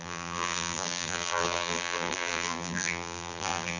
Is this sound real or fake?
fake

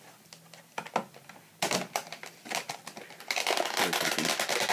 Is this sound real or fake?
real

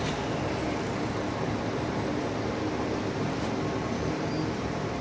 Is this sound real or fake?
fake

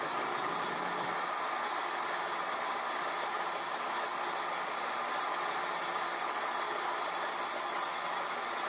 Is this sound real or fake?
fake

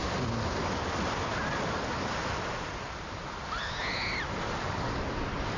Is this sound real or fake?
real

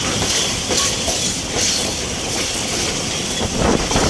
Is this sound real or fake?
fake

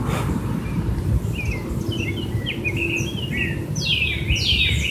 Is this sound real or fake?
real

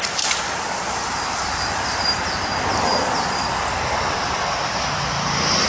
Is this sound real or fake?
real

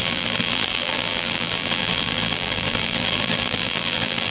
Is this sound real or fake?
fake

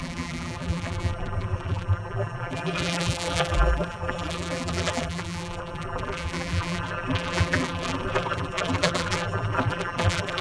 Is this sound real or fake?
fake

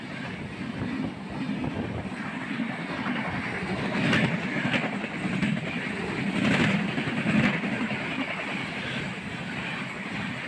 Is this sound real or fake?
real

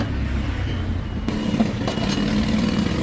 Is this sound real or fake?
real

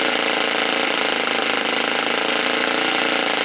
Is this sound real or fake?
real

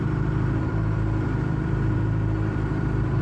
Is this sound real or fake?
fake